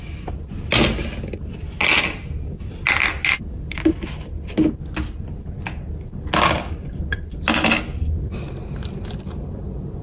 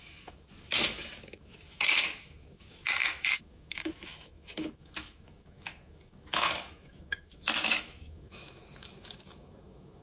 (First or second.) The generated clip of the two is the second